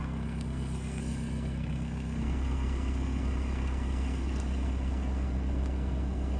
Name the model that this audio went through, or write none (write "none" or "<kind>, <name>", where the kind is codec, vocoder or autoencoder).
codec, SNAC